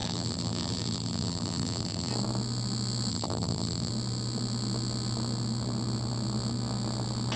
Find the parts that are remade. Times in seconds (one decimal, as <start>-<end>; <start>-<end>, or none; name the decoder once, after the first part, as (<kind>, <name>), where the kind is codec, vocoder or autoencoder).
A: 0.0-2.1 (vocoder, BigVGAN v2); 3.1-3.9